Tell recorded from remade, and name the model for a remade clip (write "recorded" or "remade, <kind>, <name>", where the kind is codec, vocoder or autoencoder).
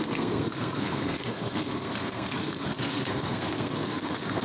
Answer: remade, codec, SNAC